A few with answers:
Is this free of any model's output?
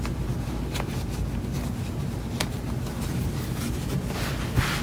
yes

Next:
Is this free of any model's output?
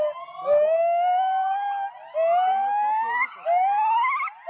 yes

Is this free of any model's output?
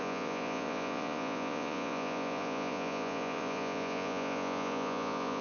no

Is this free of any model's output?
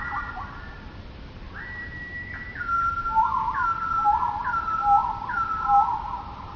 yes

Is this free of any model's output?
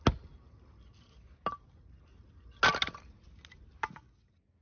yes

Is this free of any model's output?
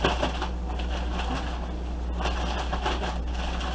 yes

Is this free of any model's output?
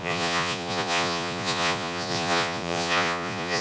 no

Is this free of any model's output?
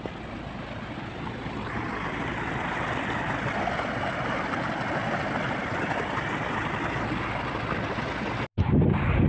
yes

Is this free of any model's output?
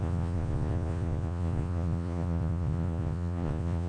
no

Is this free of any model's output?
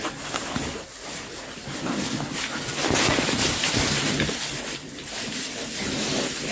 yes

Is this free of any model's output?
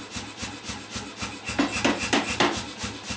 yes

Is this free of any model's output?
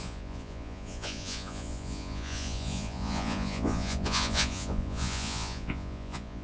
no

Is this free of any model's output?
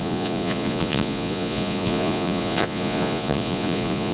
no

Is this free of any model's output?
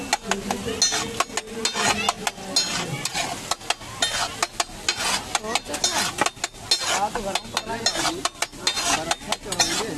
yes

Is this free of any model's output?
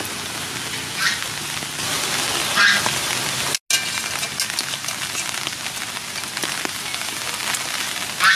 yes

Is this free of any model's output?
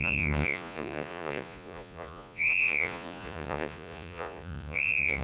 no